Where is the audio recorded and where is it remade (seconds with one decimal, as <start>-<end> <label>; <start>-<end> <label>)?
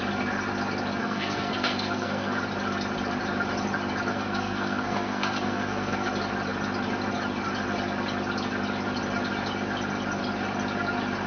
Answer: 0.0-1.0 recorded; 1.0-2.4 remade; 2.4-4.1 recorded; 4.1-6.1 remade; 6.1-11.3 recorded